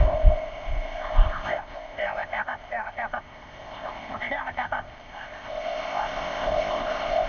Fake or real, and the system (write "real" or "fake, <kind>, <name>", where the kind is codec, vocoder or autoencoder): fake, codec, ZipCodec